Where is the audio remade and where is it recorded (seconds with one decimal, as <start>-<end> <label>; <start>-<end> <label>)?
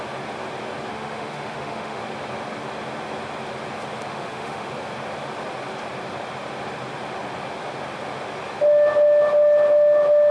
0.0-0.9 recorded; 0.9-2.0 remade; 2.0-4.1 recorded; 4.1-4.7 remade; 4.7-10.3 recorded